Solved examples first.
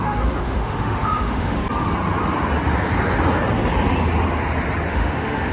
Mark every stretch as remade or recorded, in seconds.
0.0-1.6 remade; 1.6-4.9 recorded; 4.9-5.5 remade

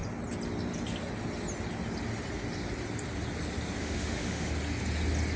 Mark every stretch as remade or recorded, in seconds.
0.0-3.8 recorded; 3.8-4.5 remade; 4.5-5.4 recorded

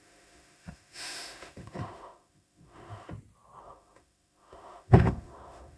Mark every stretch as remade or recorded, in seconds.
0.0-3.1 remade; 3.1-3.6 recorded; 3.6-5.8 remade

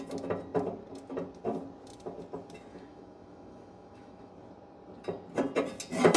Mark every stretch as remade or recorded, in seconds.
0.0-2.7 recorded; 2.7-4.3 remade; 4.3-6.2 recorded

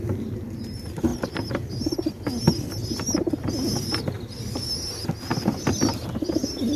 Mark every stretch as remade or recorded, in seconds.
0.0-6.8 recorded

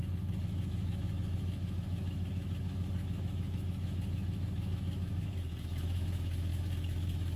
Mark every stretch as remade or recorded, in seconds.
0.0-7.4 remade